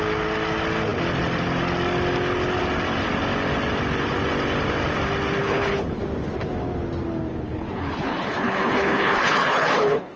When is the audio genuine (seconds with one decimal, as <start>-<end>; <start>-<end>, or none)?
0.0-5.4; 6.0-7.3